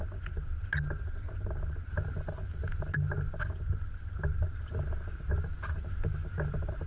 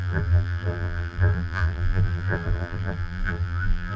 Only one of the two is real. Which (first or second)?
first